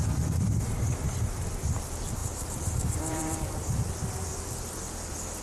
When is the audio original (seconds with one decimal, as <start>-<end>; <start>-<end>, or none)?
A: 0.0-2.2; 3.7-5.4